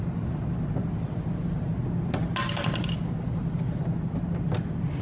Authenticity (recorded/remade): recorded